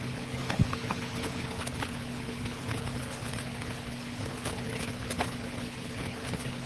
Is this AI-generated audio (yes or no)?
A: yes